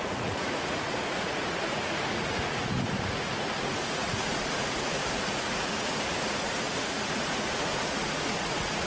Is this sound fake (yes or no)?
yes